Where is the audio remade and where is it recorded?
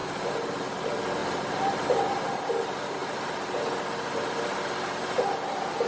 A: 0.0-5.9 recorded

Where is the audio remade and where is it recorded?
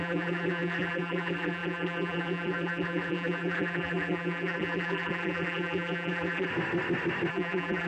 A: 0.0-6.5 remade; 6.5-7.3 recorded; 7.3-7.9 remade